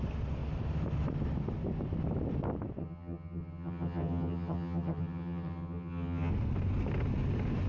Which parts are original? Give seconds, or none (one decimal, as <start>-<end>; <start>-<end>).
0.0-2.8; 6.3-7.7